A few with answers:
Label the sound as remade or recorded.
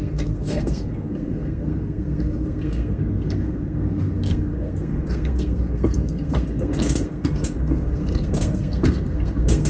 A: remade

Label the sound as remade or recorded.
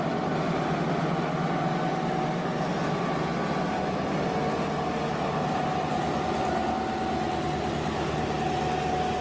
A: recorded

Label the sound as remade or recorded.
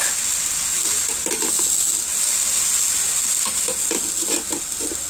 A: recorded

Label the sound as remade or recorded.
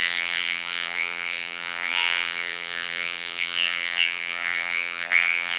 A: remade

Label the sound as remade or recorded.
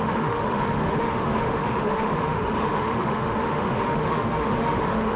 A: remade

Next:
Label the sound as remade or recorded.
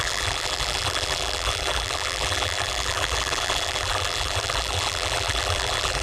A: remade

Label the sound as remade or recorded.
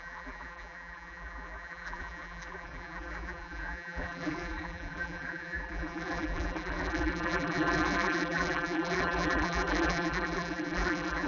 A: remade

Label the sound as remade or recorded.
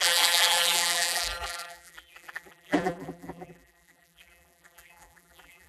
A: remade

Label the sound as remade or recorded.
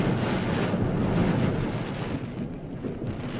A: recorded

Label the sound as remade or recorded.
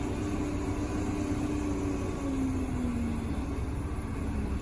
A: recorded